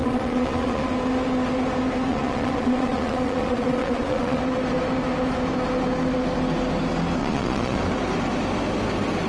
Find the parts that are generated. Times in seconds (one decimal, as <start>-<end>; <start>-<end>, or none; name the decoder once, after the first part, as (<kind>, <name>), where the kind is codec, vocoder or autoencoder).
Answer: 0.0-0.9 (vocoder, Vocos); 2.1-4.4; 7.2-7.8